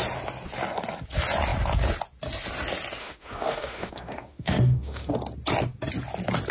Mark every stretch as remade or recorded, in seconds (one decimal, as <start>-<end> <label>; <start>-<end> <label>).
0.0-3.0 recorded; 3.0-5.1 remade; 5.1-6.5 recorded